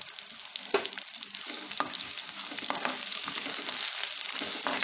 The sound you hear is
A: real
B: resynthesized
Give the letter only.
A